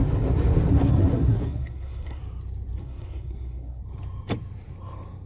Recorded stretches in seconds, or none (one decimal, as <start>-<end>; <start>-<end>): 0.0-0.7; 2.2-2.8; 3.8-5.3